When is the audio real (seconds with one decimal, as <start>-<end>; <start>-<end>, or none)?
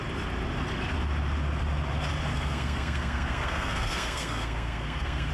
0.0-2.3